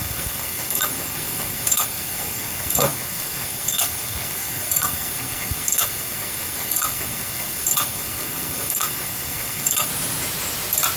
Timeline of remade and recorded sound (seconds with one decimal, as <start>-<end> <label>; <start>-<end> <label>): 0.0-9.9 remade; 9.9-11.0 recorded